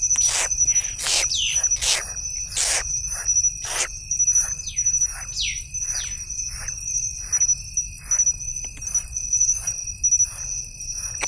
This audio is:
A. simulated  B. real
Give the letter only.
B